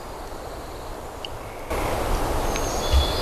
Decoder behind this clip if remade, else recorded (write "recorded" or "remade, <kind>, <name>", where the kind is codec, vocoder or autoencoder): recorded